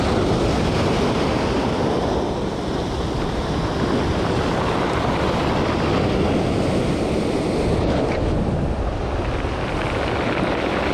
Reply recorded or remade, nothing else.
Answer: recorded